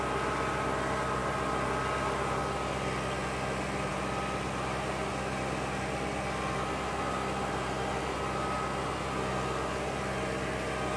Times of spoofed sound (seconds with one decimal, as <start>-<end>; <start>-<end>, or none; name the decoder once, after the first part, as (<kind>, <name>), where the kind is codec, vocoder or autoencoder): none